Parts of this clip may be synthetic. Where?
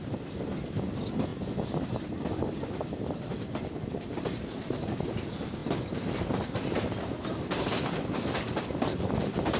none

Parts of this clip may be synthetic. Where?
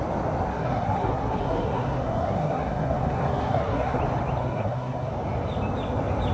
0.5-4.0 (codec, SNAC); 4.4-5.1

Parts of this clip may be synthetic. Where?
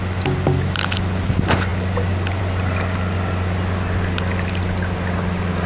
none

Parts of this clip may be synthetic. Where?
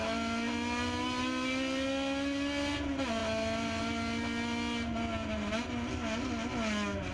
none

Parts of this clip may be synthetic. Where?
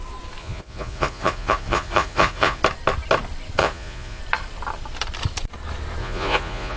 0.4-2.6 (vocoder, Vocos); 3.6-4.2; 6.0-6.8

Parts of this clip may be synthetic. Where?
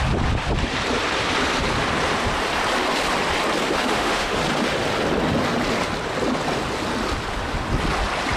3.8-4.4 (autoencoder, DAC-VAE)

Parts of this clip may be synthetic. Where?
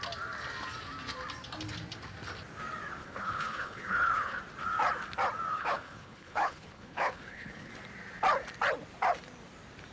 3.0-4.4 (codec, HILCodec); 5.5-7.7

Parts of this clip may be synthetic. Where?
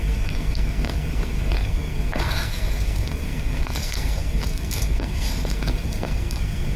0.0-6.8 (codec, SNAC)